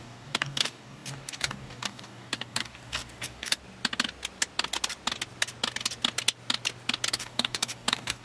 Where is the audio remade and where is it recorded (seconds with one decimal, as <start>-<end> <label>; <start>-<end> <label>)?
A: 0.0-3.6 remade; 3.6-7.1 recorded; 7.1-8.2 remade